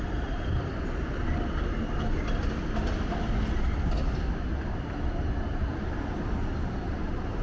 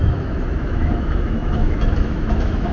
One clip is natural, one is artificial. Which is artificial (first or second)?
second